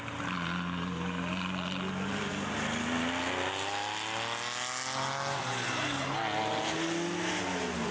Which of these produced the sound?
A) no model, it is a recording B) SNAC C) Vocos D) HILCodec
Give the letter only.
A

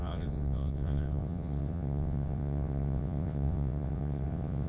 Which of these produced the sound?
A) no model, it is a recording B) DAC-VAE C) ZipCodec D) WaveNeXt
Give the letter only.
D